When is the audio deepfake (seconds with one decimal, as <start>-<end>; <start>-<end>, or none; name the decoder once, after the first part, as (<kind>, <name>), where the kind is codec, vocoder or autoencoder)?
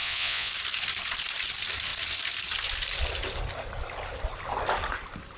0.0-0.5 (vocoder, Vocos)